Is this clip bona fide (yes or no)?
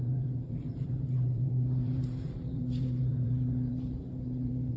no